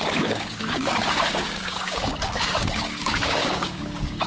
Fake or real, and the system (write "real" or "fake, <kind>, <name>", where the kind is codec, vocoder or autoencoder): fake, codec, DAC